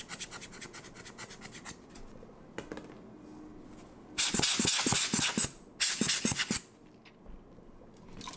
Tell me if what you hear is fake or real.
real